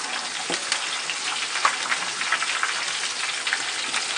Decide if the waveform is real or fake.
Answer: real